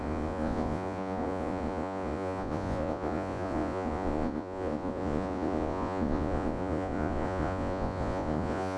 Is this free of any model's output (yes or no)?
no